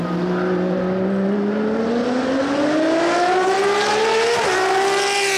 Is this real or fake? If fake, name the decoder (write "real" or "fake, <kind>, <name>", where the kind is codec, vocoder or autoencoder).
real